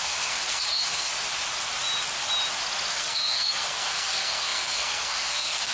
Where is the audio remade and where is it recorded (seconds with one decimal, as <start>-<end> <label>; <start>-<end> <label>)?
0.0-1.1 remade; 1.1-2.9 recorded; 2.9-5.7 remade